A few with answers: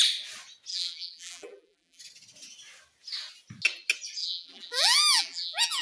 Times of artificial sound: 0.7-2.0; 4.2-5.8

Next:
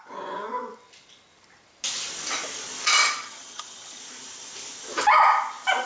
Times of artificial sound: 3.2-4.0

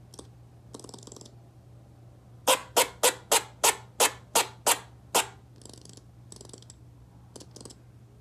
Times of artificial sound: none

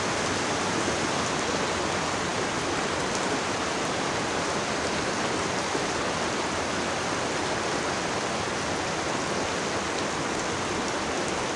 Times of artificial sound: none

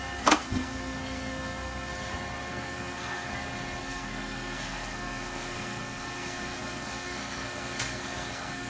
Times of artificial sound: 0.0-1.9; 2.5-3.3; 3.8-8.7

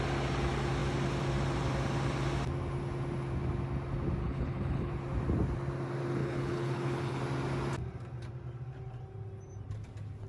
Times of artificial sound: 4.2-4.9; 6.2-7.2

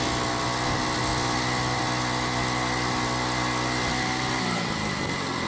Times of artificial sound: none

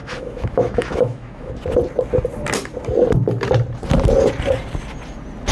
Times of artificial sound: 0.0-1.5